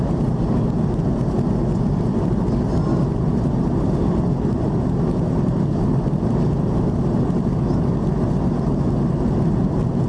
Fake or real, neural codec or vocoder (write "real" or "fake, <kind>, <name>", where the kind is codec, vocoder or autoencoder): real